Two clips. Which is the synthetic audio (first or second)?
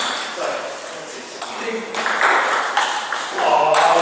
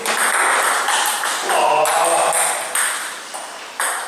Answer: first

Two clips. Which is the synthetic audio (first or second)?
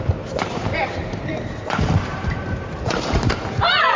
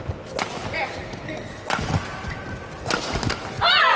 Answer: first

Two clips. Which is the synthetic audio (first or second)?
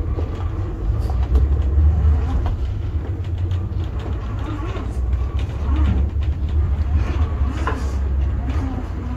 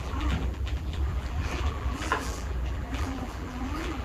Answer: second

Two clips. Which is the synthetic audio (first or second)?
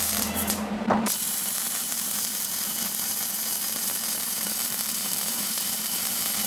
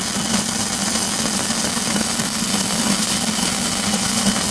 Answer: first